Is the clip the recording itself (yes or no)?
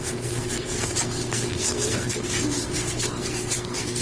no